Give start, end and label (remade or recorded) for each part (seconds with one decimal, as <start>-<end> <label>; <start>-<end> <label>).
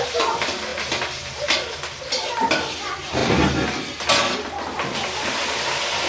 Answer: 0.0-6.1 recorded